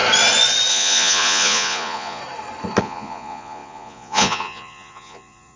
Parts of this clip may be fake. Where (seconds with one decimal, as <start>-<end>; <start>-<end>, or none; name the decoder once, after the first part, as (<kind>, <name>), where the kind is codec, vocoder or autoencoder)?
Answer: 0.7-2.2 (vocoder, Vocos); 2.8-5.6